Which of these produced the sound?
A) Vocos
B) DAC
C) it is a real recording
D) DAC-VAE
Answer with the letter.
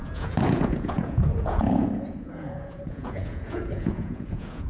A